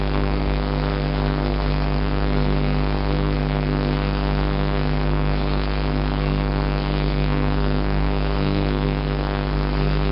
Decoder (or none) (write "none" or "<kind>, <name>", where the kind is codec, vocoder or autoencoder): codec, SNAC